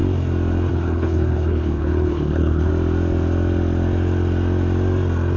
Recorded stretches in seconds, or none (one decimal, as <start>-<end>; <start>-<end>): 0.0-0.7; 2.7-5.4

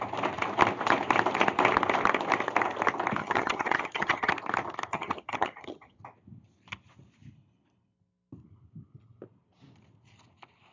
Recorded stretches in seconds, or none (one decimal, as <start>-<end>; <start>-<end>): 0.0-3.2; 4.3-4.9; 6.0-10.7

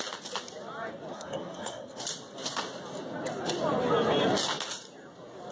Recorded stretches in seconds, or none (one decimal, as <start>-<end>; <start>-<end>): 0.0-1.1; 2.0-5.5